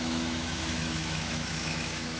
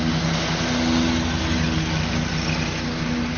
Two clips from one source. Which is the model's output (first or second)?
first